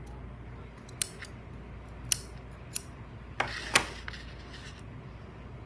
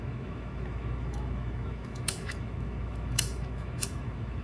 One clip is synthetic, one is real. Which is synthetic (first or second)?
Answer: second